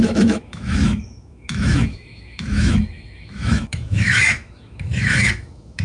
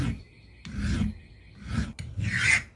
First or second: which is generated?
first